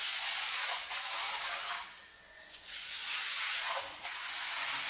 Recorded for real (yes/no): no